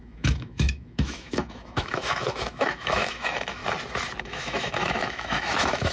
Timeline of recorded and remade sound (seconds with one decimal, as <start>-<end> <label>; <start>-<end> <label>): 0.0-3.6 remade; 3.6-4.2 recorded; 4.2-5.9 remade